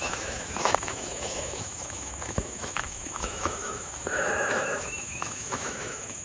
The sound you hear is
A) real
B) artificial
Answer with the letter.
B